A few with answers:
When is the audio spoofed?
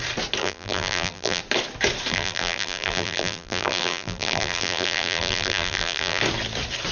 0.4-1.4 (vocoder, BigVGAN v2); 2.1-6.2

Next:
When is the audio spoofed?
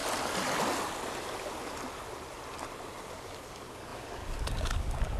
3.1-5.2 (codec, DAC)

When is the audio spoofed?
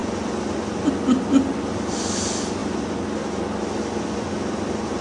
none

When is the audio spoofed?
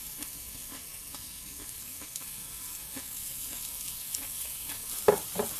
0.0-4.9 (codec, SNAC)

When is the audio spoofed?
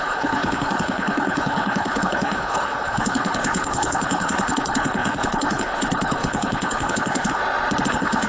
0.0-7.4 (codec, HILCodec); 7.9-8.3